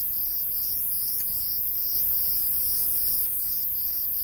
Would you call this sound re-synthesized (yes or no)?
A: yes